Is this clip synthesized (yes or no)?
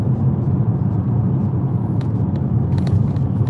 no